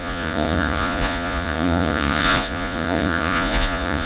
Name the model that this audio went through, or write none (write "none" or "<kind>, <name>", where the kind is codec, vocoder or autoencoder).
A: vocoder, Vocos